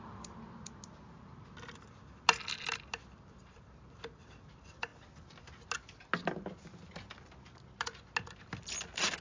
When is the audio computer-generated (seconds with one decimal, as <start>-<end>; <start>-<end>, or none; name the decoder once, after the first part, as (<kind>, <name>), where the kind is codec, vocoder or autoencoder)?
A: none